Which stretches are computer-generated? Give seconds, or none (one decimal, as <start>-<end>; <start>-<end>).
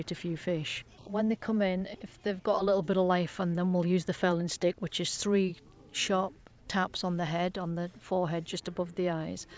0.0-5.5; 6.4-9.6